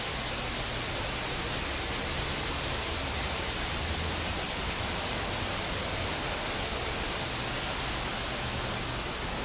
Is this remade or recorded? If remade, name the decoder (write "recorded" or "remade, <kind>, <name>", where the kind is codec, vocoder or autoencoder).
recorded